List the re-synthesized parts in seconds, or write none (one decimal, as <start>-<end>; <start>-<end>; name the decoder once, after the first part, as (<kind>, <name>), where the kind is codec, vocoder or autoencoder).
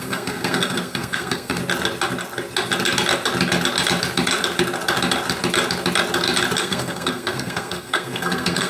0.0-1.6 (codec, SNAC); 6.6-8.7